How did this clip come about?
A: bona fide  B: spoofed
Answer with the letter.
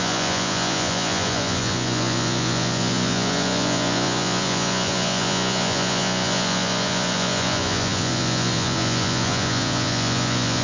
B